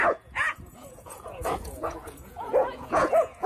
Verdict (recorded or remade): remade